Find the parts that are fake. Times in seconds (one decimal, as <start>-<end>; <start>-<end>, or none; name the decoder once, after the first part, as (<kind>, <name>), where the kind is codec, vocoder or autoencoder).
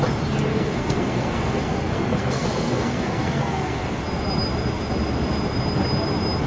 0.5-4.0 (codec, SNAC)